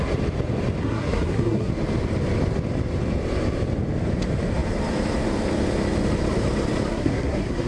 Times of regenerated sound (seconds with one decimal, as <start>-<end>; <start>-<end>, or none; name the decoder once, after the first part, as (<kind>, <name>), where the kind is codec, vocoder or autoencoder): 0.8-1.7 (codec, SNAC); 6.9-7.7